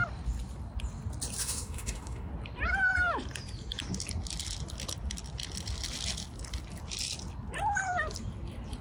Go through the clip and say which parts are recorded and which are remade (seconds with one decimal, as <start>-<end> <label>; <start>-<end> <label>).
0.0-1.4 recorded; 1.4-2.3 remade; 2.3-8.8 recorded